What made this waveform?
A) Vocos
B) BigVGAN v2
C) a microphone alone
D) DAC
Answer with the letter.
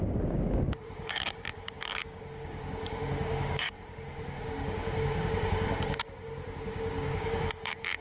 D